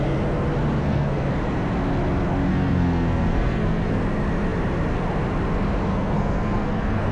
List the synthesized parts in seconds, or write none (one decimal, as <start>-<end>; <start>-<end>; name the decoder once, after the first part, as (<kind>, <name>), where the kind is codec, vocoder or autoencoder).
0.8-1.3 (codec, SNAC); 2.5-4.0; 5.9-7.1

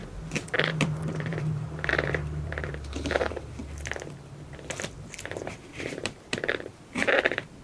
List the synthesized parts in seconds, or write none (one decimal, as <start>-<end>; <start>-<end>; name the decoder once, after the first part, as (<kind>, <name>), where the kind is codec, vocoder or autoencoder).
0.7-3.6 (vocoder, BigVGAN v2); 5.4-7.6

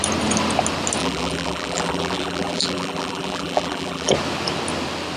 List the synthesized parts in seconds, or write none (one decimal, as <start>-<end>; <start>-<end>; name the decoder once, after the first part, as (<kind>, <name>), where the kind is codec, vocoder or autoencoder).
1.0-4.1 (vocoder, BigVGAN v2)

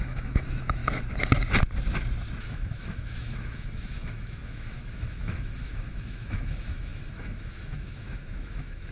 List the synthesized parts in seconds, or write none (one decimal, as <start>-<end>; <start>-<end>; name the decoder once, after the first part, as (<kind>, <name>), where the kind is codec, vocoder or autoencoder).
0.0-0.8 (autoencoder, DAC-VAE); 2.4-8.9

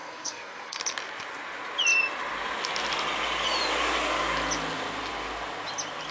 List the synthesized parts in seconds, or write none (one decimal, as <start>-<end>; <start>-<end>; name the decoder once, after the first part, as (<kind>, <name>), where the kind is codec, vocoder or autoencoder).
0.0-0.8 (codec, SNAC)

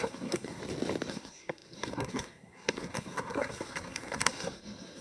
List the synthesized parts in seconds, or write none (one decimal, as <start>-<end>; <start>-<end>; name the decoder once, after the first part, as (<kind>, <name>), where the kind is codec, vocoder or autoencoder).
0.0-0.6 (codec, SNAC); 1.1-5.0

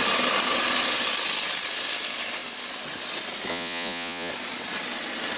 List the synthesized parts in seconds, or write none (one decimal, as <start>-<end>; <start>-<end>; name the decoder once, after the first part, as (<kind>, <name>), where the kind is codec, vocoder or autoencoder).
3.5-4.3 (vocoder, Vocos)

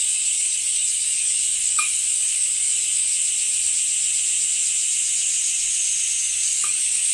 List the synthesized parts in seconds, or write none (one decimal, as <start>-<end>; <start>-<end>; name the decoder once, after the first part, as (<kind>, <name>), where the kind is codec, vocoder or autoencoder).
0.0-3.1 (codec, DAC); 6.2-7.1